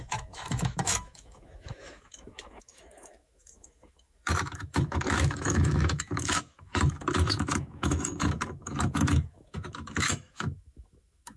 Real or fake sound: fake